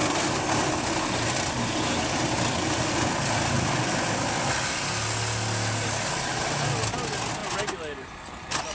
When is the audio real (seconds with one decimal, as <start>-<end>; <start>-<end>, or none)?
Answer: 0.0-8.7